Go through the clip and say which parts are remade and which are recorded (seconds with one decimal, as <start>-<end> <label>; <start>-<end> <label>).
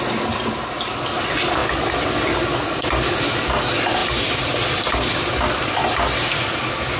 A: 0.0-7.0 recorded